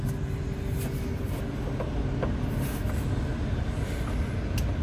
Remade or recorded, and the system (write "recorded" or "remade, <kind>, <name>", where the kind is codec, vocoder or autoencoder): recorded